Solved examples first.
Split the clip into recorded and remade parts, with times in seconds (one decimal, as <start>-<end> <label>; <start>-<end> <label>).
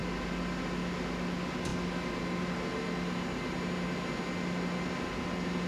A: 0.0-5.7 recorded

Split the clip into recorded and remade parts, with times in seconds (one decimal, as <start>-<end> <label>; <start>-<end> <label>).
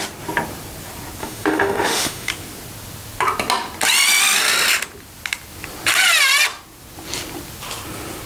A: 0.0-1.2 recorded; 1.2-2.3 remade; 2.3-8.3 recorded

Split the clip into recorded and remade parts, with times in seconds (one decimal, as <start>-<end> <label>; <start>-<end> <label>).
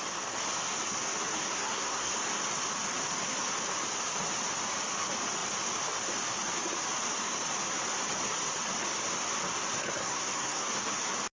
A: 0.0-1.5 recorded; 1.5-2.1 remade; 2.1-10.0 recorded; 10.0-10.7 remade; 10.7-11.3 recorded